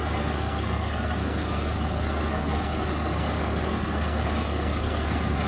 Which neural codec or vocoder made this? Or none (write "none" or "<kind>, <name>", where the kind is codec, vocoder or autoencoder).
codec, SNAC